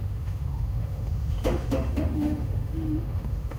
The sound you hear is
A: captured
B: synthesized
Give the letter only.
B